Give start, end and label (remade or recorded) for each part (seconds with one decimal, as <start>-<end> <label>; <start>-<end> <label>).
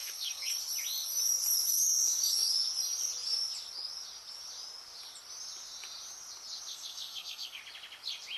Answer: 0.0-0.5 remade; 0.5-6.7 recorded; 6.7-7.6 remade; 7.6-8.4 recorded